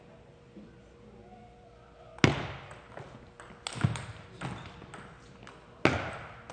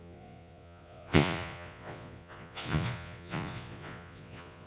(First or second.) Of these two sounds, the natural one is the first